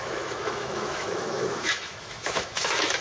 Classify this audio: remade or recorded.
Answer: remade